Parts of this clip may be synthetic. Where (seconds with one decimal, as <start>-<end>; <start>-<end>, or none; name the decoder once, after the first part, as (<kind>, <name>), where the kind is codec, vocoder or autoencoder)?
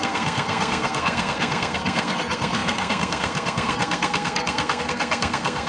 0.0-5.7 (codec, SNAC)